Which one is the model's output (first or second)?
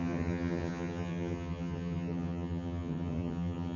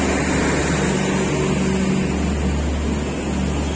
first